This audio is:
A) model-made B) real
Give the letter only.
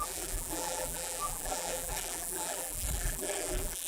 A